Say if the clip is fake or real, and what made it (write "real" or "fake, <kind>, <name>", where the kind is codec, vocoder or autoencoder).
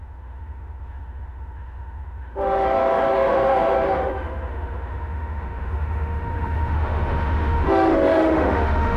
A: fake, autoencoder, DAC-VAE